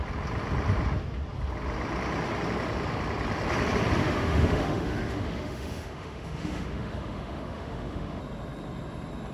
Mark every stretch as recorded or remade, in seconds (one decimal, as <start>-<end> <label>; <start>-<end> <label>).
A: 0.0-4.0 recorded; 4.0-8.2 remade; 8.2-9.3 recorded